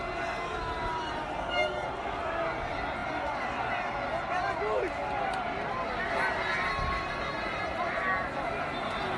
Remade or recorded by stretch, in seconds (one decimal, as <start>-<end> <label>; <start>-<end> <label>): 0.0-9.2 recorded